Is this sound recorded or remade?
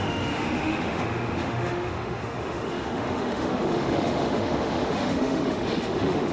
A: remade